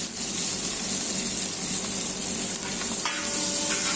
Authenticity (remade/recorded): recorded